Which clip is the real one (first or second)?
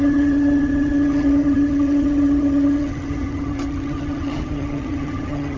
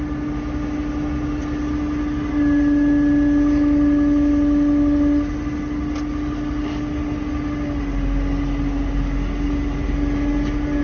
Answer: second